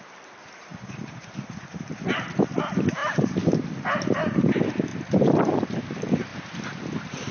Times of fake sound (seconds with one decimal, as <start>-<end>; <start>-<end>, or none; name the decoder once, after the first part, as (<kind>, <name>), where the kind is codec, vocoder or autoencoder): 0.7-2.0 (vocoder, BigVGAN v2); 3.0-3.7; 4.9-5.8